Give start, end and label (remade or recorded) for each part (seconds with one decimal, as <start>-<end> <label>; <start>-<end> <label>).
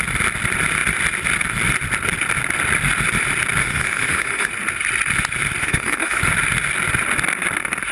0.0-3.6 recorded; 3.6-4.5 remade; 4.5-5.6 recorded; 5.6-6.2 remade; 6.2-7.9 recorded